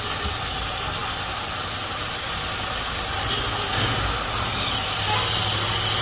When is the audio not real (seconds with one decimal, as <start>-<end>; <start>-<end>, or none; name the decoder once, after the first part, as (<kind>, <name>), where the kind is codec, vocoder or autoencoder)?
none